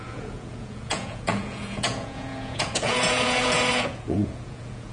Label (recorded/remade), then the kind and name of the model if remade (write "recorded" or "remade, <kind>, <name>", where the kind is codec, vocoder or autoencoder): remade, vocoder, Vocos